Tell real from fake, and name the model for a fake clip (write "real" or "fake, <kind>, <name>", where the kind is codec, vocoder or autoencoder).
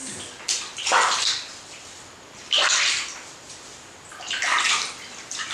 fake, vocoder, BigVGAN v2